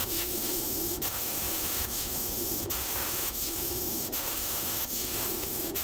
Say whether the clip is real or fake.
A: fake